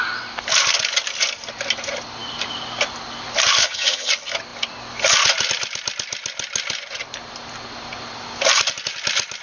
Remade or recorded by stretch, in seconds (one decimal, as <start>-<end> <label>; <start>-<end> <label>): 0.0-3.6 recorded; 3.6-4.1 remade; 4.1-9.4 recorded